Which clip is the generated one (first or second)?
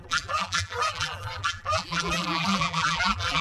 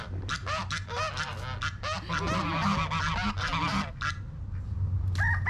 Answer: first